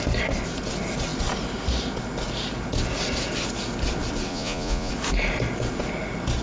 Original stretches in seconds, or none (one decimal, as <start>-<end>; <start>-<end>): 0.0-4.3; 4.9-6.4